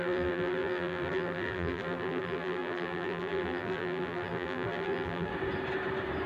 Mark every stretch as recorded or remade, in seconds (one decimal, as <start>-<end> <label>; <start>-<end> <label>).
0.0-5.3 remade; 5.3-6.3 recorded